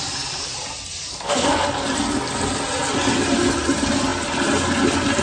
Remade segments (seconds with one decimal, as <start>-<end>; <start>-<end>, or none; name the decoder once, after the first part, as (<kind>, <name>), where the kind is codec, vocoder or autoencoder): 1.1-1.6 (codec, SNAC)